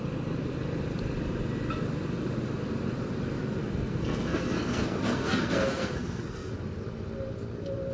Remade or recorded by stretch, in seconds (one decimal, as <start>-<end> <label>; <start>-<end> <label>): 0.0-3.6 recorded; 3.6-6.5 remade; 6.5-7.9 recorded